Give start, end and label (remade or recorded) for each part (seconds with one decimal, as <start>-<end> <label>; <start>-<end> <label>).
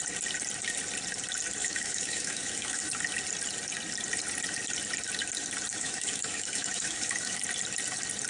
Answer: 0.0-1.6 recorded; 1.6-2.9 remade; 2.9-5.7 recorded; 5.7-7.4 remade; 7.4-8.3 recorded